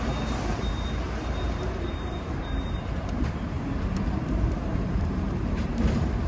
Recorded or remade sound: remade